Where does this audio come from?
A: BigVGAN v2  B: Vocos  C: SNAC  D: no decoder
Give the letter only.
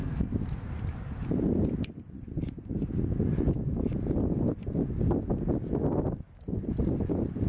D